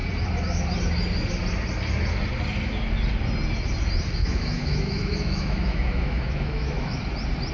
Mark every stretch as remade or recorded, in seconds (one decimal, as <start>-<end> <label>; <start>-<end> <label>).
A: 0.0-4.2 recorded; 4.2-7.0 remade; 7.0-7.5 recorded